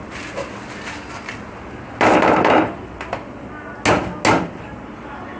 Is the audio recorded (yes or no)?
yes